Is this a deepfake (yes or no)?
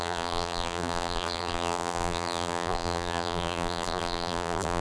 yes